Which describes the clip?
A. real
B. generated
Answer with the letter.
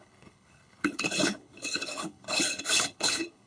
B